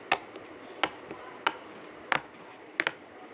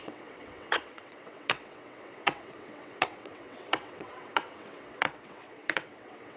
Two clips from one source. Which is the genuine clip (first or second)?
first